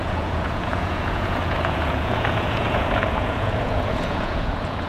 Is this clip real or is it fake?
fake